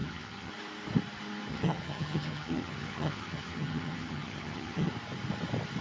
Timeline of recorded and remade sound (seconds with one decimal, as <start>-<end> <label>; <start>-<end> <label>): 0.0-0.5 remade; 0.5-1.5 recorded; 1.5-4.9 remade; 4.9-5.8 recorded